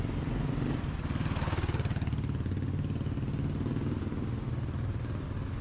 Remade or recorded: recorded